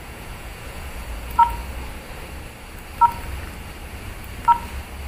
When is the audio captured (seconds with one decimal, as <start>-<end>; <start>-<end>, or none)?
1.6-5.1